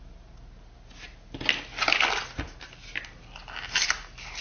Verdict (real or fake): real